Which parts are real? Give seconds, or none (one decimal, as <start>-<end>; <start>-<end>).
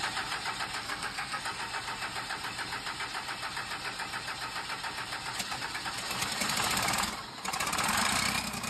0.0-0.8; 1.4-8.7